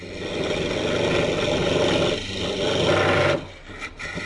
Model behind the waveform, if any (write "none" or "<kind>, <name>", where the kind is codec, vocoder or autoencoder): none